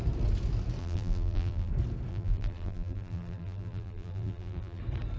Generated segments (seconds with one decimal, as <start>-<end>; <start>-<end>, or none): 0.8-1.7; 2.1-4.8